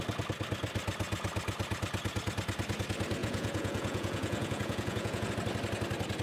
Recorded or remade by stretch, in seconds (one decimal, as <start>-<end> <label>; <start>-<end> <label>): 0.0-3.2 recorded; 3.2-5.3 remade; 5.3-6.2 recorded